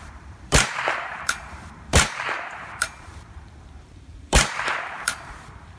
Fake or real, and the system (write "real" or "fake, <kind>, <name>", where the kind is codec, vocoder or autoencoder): fake, vocoder, BigVGAN v2